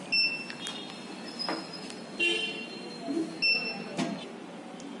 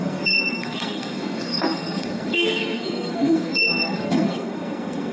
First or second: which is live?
first